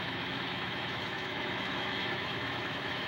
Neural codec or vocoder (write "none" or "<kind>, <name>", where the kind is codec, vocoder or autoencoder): autoencoder, DAC-VAE